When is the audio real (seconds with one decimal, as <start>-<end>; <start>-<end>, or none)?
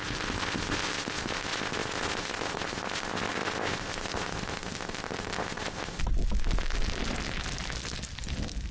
6.0-8.7